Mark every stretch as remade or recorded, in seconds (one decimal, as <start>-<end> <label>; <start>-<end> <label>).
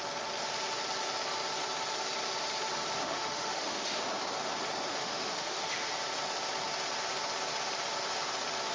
0.0-3.0 recorded; 3.0-4.0 remade; 4.0-4.9 recorded; 4.9-5.9 remade; 5.9-8.7 recorded